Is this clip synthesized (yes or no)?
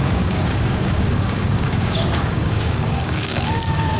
yes